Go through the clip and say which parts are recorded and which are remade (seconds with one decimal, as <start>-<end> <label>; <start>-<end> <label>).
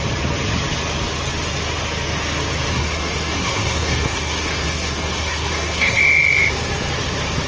0.0-2.7 recorded; 2.7-6.0 remade; 6.0-7.5 recorded